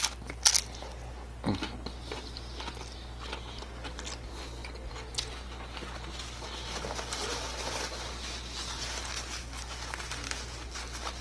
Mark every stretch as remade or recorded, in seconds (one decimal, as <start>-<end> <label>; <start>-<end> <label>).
0.0-11.2 recorded